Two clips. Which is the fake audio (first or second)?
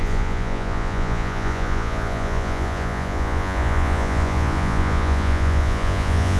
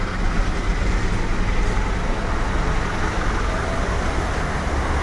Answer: first